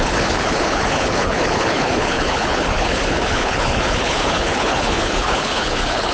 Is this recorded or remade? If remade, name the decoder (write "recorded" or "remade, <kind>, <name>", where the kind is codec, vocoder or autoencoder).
remade, codec, HILCodec